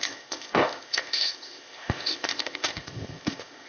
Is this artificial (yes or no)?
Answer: yes